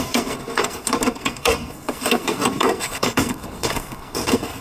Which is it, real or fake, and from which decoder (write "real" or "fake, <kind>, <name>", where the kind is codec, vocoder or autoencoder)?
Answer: fake, codec, SNAC